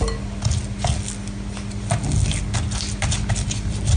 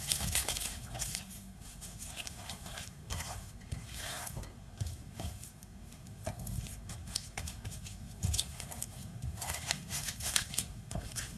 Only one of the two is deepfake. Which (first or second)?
second